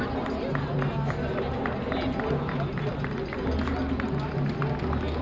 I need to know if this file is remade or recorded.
recorded